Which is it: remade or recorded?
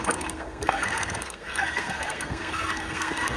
remade